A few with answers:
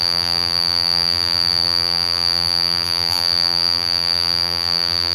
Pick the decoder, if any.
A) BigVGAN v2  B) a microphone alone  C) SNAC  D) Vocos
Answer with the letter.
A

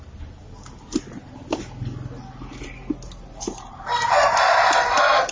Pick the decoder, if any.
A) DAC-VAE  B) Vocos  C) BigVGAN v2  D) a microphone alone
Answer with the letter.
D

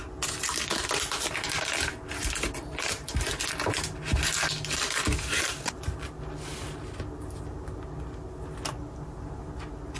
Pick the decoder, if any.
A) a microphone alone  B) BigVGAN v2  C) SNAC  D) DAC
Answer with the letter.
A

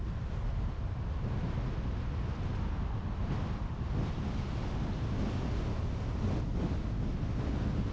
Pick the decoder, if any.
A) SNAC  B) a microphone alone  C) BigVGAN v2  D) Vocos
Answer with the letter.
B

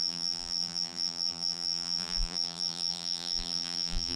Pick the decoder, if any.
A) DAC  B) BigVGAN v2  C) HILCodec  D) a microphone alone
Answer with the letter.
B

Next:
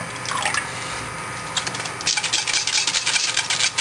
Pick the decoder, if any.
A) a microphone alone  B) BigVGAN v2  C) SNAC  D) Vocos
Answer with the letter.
A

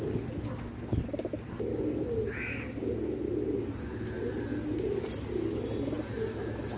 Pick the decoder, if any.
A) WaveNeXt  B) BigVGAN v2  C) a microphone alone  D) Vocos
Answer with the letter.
C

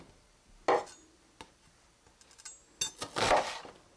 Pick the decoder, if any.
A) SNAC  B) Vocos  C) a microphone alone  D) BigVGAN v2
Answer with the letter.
C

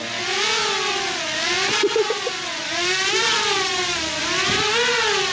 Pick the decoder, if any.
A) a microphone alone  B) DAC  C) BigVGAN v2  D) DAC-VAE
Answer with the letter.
C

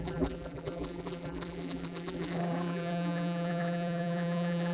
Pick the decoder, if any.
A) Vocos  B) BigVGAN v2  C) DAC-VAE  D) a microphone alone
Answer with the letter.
B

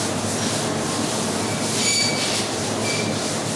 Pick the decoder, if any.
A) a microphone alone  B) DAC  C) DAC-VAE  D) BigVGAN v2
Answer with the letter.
A